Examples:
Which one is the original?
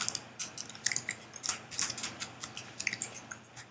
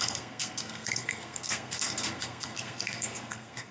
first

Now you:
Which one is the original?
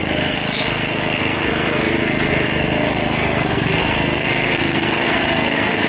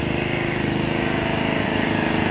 second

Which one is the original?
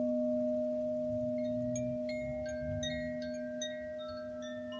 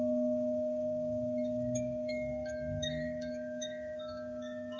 first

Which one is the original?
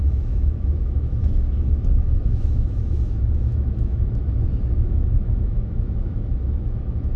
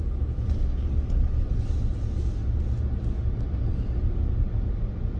second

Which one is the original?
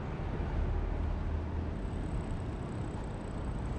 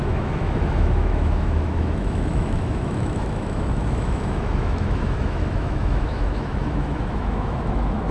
first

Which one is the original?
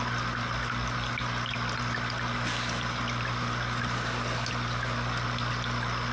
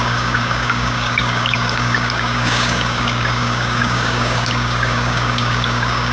first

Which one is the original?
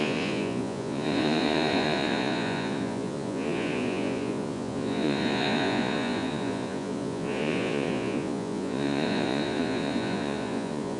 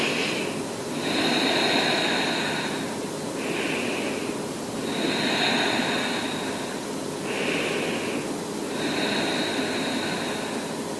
second